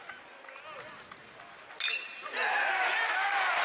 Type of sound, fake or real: real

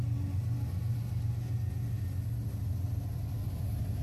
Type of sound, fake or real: real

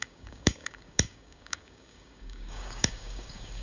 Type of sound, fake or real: fake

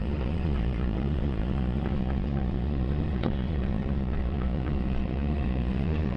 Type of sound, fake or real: fake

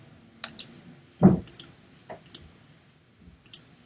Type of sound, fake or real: real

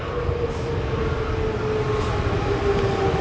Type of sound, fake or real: real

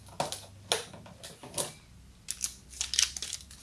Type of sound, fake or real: real